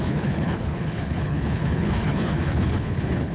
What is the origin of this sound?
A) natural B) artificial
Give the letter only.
B